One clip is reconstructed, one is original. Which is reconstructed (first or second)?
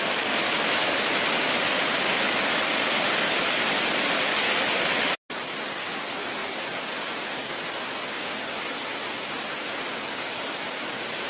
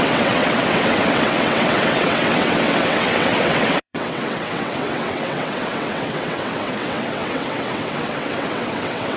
second